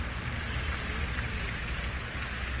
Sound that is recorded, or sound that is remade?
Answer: recorded